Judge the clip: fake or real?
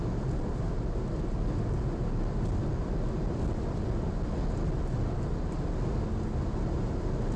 real